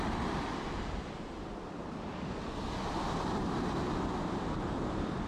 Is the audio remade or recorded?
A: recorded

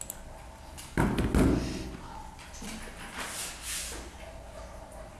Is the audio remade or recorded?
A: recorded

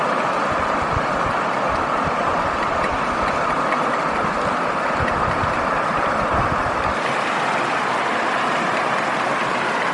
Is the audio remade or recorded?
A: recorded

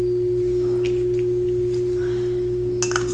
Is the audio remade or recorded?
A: recorded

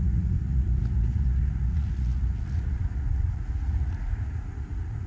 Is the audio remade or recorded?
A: remade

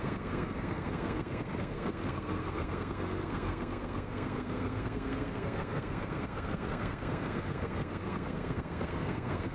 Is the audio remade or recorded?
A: remade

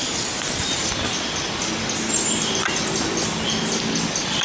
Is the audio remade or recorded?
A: recorded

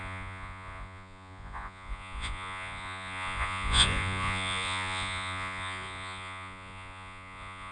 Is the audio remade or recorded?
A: remade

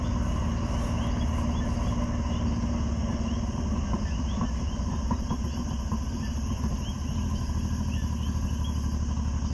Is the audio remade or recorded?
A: recorded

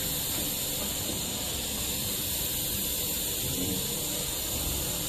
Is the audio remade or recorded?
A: recorded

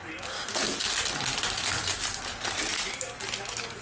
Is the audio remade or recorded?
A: recorded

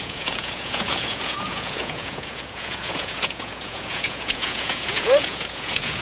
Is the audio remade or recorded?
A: remade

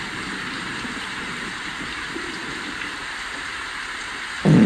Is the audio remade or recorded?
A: remade